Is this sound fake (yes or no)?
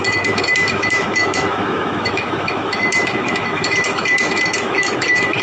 yes